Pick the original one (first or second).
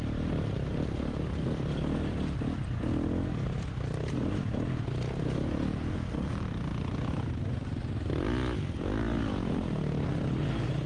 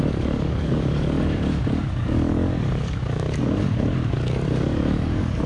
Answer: first